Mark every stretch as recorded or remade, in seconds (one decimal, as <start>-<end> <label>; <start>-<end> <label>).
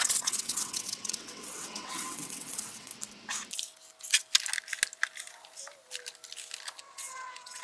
0.0-2.9 remade; 2.9-6.8 recorded; 6.8-7.6 remade